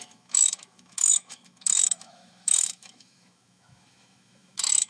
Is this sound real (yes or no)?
no